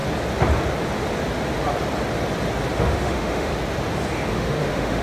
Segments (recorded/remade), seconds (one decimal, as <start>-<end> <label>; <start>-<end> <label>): 0.0-2.8 recorded; 2.8-3.5 remade; 3.5-4.3 recorded; 4.3-5.0 remade